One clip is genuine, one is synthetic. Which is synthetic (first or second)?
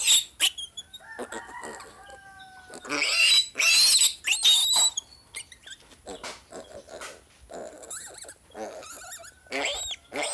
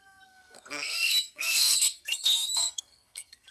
second